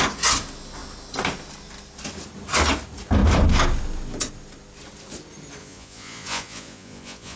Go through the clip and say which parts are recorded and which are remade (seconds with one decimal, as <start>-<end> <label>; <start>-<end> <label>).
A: 0.0-5.6 recorded; 5.6-7.4 remade